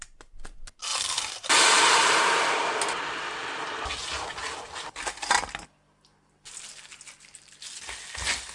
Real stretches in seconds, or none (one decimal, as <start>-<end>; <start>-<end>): 0.0-8.5